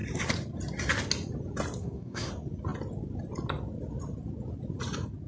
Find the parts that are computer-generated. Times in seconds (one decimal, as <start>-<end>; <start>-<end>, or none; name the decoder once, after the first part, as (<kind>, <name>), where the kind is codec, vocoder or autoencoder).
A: 1.8-2.3 (codec, SNAC)